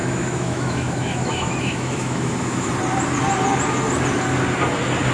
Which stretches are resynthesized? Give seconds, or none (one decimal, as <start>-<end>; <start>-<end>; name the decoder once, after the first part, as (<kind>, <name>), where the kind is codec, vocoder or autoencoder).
0.0-2.7 (autoencoder, DAC-VAE)